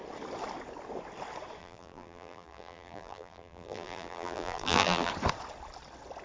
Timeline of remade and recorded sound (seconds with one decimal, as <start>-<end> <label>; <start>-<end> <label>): 0.0-1.6 recorded; 1.6-5.1 remade; 5.1-6.2 recorded